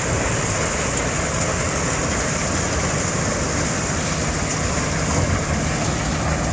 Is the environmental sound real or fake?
real